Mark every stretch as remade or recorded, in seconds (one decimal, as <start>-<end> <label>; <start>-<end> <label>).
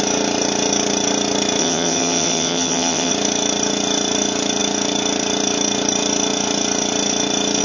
0.0-1.6 recorded; 1.6-3.1 remade; 3.1-7.6 recorded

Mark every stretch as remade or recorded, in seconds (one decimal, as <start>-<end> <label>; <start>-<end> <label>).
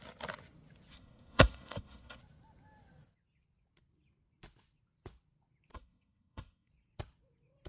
0.0-0.9 recorded; 0.9-2.2 remade; 2.2-5.7 recorded; 5.7-6.7 remade; 6.7-7.7 recorded